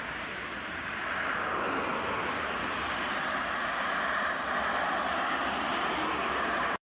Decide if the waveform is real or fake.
fake